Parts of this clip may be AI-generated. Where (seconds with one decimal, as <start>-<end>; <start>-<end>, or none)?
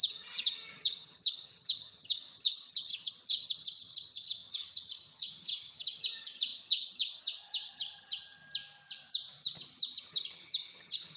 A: 0.0-8.4; 10.0-11.2